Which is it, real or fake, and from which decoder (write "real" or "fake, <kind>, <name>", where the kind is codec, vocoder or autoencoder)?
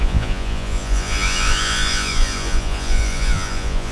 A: fake, vocoder, Vocos